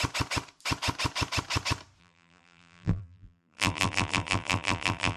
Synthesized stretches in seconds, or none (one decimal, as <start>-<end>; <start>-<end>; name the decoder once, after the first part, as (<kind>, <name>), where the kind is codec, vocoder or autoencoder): 2.0-5.2 (vocoder, BigVGAN v2)